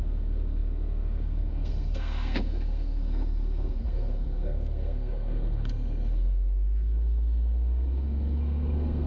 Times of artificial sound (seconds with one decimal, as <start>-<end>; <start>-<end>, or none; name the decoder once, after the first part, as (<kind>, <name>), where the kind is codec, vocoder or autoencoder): 0.0-9.1 (codec, SNAC)